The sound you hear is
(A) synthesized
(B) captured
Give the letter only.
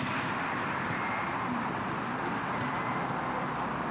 B